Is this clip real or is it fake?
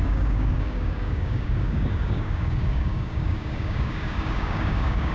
fake